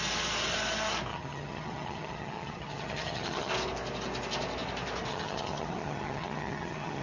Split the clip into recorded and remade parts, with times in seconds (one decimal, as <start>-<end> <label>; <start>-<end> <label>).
0.0-1.1 recorded; 1.1-3.5 remade; 3.5-5.1 recorded; 5.1-7.0 remade